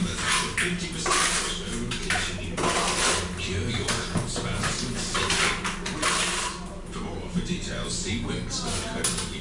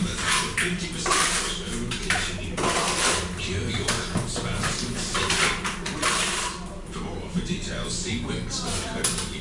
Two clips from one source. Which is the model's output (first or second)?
second